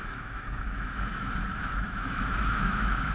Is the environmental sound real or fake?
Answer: fake